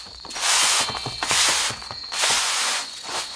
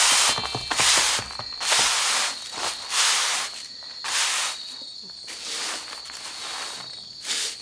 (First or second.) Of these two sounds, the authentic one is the second